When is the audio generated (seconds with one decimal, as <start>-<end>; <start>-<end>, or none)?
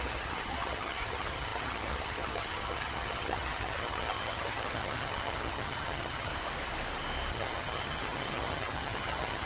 0.0-6.3; 7.3-9.5